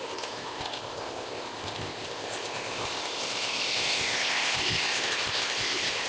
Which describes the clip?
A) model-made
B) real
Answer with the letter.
A